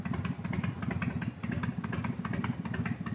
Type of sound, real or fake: real